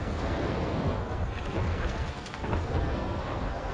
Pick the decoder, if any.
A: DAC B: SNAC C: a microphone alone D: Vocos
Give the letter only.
B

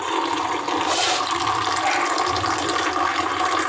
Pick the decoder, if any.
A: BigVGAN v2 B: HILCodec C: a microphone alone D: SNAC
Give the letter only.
C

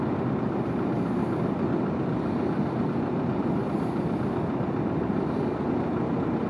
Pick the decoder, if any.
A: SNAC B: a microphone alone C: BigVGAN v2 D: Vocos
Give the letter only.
B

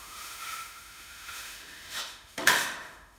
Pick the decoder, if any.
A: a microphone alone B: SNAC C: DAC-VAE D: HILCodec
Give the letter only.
C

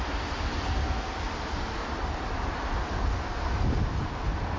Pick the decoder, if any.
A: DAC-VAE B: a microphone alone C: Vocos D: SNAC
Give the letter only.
B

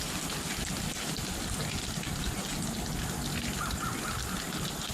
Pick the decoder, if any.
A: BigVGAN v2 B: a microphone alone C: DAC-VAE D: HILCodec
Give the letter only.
B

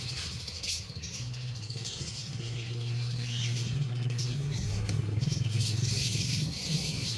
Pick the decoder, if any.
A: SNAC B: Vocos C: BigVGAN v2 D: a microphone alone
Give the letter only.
A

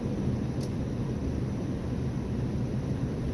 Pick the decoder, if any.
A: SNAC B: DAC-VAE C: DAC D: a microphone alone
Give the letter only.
D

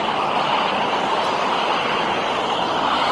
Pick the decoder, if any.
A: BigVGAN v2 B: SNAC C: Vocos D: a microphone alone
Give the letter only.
D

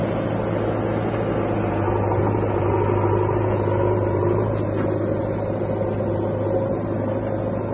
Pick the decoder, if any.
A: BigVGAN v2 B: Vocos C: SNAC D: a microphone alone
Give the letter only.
D